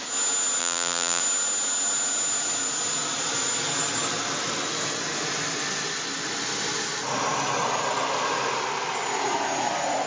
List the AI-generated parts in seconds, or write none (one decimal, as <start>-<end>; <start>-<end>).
0.6-1.2